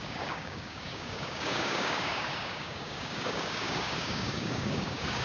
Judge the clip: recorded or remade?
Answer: remade